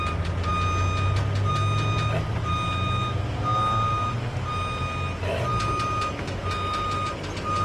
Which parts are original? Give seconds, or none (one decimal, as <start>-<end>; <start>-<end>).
0.0-7.6